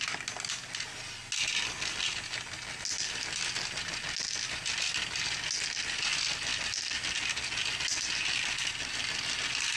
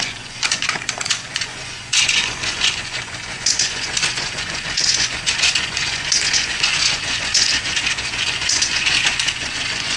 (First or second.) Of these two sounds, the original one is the first